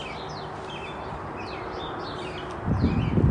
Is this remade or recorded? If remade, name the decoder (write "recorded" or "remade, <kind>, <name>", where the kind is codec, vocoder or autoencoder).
recorded